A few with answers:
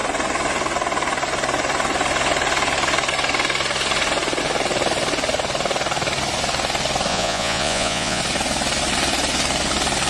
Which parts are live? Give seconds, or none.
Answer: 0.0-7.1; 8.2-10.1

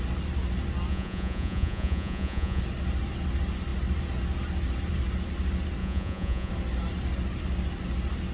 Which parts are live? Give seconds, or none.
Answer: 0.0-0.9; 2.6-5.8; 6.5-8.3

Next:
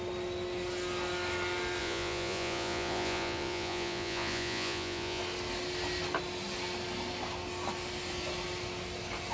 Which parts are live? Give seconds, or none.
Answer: 0.0-1.8; 5.2-9.3